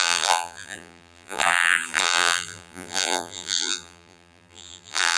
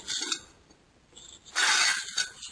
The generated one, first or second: first